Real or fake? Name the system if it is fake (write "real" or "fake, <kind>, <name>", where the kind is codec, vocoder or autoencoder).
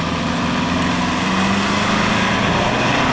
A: real